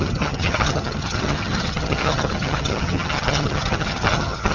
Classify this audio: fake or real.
fake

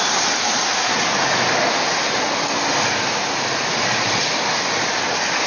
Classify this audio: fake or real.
real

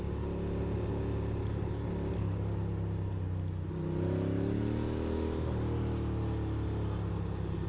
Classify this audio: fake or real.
real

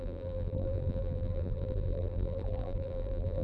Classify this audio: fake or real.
fake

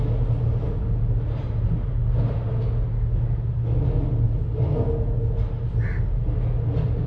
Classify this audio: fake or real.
real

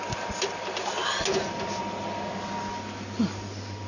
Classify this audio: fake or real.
real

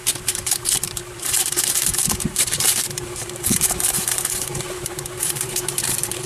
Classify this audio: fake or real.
fake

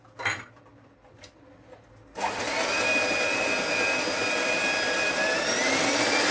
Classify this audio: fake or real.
real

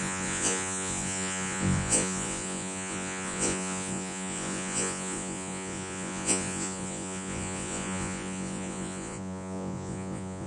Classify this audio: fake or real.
fake